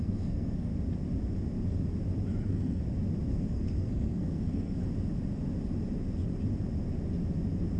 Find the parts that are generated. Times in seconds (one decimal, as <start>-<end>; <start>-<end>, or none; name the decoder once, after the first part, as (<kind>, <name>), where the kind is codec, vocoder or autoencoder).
0.0-0.7 (codec, SNAC); 2.4-2.8; 3.3-4.8